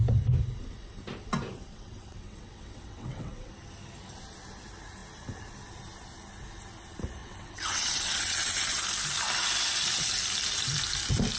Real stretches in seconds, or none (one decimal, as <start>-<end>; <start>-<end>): 0.0-1.7; 3.5-7.2; 8.8-11.4